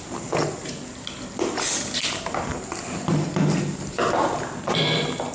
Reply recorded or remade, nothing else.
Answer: recorded